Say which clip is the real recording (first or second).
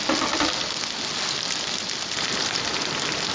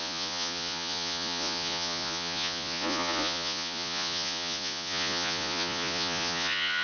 first